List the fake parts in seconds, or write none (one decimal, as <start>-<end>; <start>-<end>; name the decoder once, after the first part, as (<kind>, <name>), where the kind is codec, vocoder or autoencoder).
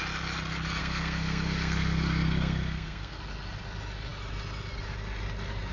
0.8-3.2 (codec, SNAC)